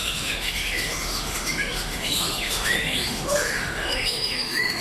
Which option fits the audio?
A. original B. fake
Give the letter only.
B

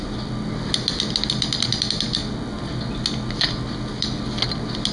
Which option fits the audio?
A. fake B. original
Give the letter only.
B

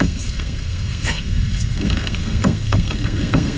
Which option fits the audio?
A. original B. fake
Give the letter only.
B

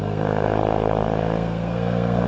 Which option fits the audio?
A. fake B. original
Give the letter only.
A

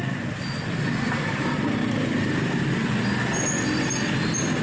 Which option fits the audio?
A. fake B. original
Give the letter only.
B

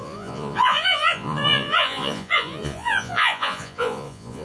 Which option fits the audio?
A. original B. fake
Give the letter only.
B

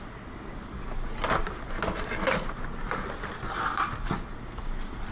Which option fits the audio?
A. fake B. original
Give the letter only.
B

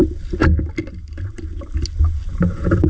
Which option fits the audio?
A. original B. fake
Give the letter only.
A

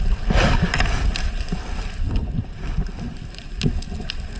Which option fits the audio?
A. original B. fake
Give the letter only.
A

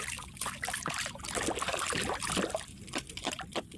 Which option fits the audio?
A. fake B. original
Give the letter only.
A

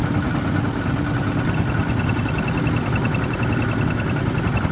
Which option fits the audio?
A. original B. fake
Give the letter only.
A